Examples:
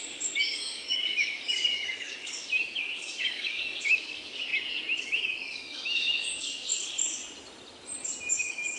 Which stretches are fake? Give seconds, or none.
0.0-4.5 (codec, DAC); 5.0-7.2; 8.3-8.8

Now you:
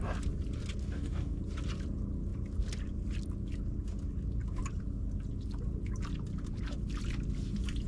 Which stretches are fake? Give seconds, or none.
0.8-1.4 (codec, DAC)

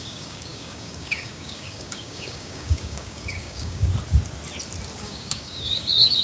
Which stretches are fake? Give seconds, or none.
0.0-3.9 (codec, DAC); 5.0-6.2

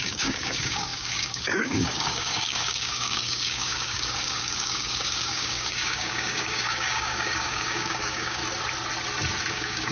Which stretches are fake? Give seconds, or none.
0.0-8.4 (codec, DAC); 9.5-9.9